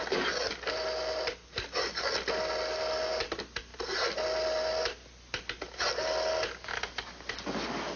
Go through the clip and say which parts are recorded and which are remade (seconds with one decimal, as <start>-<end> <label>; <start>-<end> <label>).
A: 0.0-8.0 recorded